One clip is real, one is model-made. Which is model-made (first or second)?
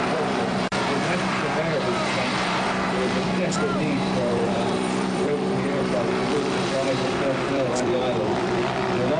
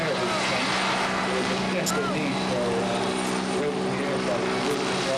first